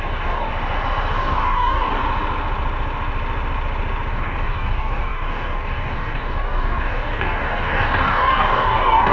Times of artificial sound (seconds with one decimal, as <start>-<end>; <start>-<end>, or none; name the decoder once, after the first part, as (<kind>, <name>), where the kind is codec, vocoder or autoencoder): 0.0-0.5 (codec, DAC); 1.1-2.0; 4.1-9.1